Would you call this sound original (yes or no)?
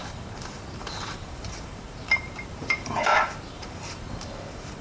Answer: no